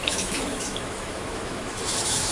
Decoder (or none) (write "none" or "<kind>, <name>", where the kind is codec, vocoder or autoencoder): autoencoder, DAC-VAE